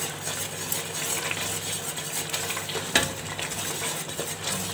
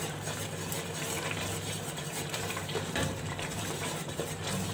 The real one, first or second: first